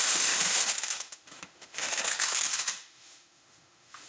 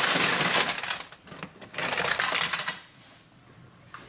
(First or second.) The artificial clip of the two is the first